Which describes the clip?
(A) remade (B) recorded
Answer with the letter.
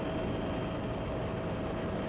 B